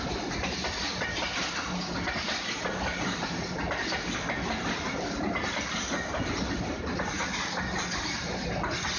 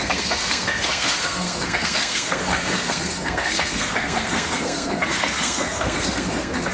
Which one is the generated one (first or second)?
second